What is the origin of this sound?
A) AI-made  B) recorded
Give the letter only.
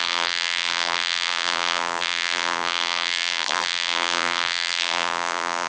A